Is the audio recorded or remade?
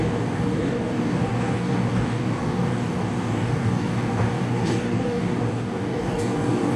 remade